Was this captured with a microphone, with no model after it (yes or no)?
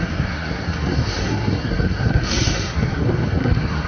no